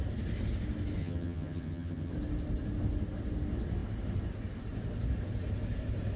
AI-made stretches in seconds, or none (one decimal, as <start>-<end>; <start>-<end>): 1.0-2.1